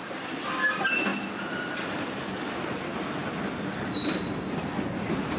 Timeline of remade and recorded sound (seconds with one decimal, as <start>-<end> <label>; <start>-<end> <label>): 0.0-0.6 remade; 0.6-1.1 recorded; 1.1-1.8 remade; 1.8-3.2 recorded; 3.2-3.9 remade; 3.9-5.4 recorded